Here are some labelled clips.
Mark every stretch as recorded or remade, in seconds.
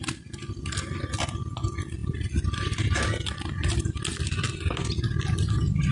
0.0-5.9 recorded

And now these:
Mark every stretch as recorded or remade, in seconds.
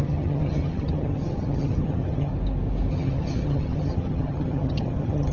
0.0-2.3 remade; 2.3-2.9 recorded; 2.9-5.3 remade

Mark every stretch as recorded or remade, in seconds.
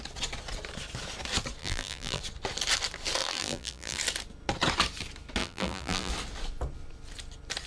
0.0-1.6 recorded; 1.6-2.2 remade; 2.2-3.2 recorded; 3.2-4.0 remade; 4.0-5.4 recorded; 5.4-6.1 remade; 6.1-7.7 recorded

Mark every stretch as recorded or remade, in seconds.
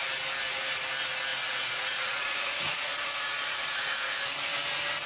0.0-1.3 recorded; 1.3-4.2 remade; 4.2-5.1 recorded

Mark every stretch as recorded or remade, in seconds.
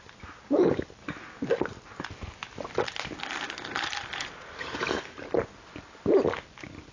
0.0-6.9 recorded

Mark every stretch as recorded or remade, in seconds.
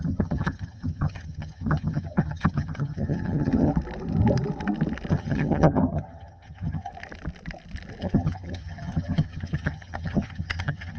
0.0-3.7 remade; 3.7-5.1 recorded; 5.1-6.9 remade; 6.9-8.0 recorded; 8.0-11.0 remade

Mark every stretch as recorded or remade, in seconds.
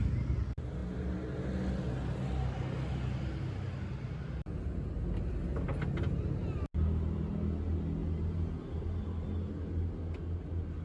0.0-10.8 recorded